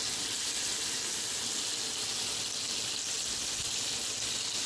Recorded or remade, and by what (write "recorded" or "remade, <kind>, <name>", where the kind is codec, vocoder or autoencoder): recorded